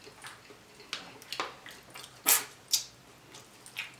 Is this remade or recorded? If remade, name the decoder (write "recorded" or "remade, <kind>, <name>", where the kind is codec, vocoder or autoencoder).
recorded